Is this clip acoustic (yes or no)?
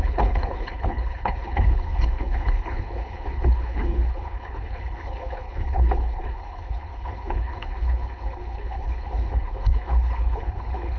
no